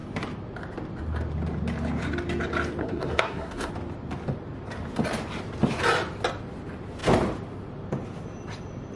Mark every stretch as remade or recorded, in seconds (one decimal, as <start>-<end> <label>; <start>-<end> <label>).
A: 0.0-2.8 recorded; 2.8-3.7 remade; 3.7-9.0 recorded